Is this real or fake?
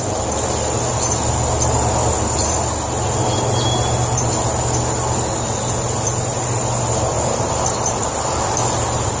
real